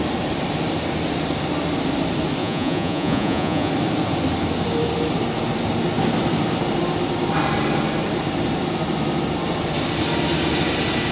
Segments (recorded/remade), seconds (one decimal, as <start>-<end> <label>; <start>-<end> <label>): 0.0-2.4 recorded; 2.4-3.7 remade; 3.7-11.1 recorded